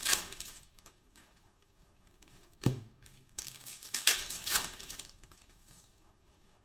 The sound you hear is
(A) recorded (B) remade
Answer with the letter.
B